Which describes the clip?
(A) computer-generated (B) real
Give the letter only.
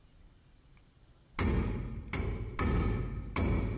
B